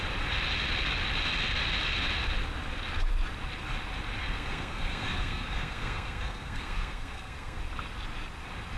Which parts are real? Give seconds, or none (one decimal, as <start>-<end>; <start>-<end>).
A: 0.0-4.2; 7.6-8.8